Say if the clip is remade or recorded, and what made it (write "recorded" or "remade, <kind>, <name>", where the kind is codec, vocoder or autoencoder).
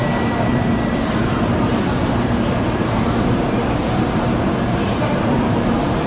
remade, vocoder, BigVGAN v2